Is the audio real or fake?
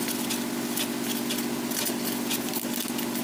real